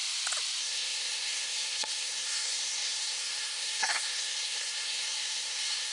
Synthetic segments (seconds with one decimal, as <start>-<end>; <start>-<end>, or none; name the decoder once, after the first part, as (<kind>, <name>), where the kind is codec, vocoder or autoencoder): 0.6-5.9 (codec, SNAC)